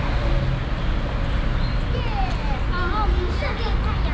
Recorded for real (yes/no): yes